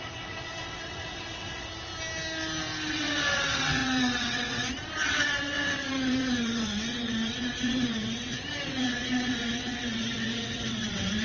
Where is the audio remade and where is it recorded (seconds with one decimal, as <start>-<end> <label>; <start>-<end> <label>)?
0.0-1.7 remade; 1.7-2.9 recorded; 2.9-11.2 remade